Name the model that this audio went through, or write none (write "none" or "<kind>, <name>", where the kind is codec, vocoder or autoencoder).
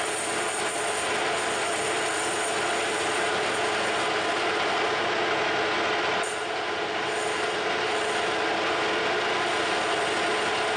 none